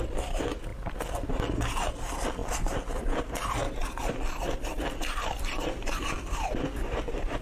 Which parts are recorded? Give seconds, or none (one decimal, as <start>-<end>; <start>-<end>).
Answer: 0.0-7.4